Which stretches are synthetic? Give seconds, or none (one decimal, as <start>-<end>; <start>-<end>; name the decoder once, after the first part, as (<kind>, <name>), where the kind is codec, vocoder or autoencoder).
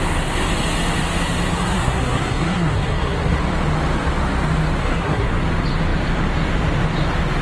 1.5-3.4 (codec, SNAC); 4.8-5.3